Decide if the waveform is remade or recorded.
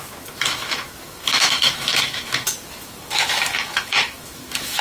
remade